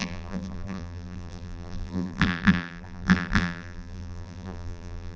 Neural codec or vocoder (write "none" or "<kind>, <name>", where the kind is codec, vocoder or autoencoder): vocoder, BigVGAN v2